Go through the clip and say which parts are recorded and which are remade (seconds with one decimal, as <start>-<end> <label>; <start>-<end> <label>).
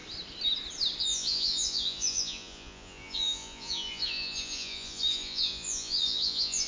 0.0-1.0 recorded; 1.0-6.7 remade